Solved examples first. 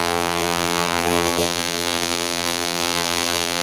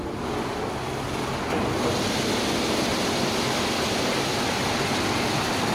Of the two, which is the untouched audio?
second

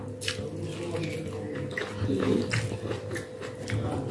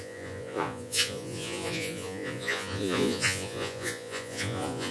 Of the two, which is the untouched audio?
first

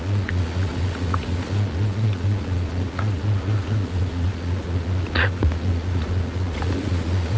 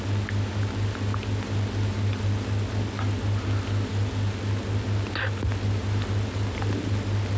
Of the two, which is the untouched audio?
second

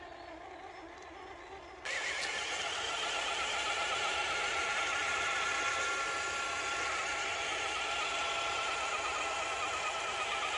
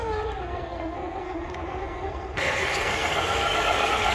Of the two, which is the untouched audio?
first